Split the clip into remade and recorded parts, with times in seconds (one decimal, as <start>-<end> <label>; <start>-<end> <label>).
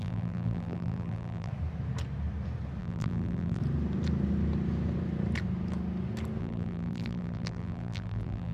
0.0-1.5 remade; 1.5-2.8 recorded; 2.8-3.6 remade; 3.6-6.4 recorded; 6.4-8.5 remade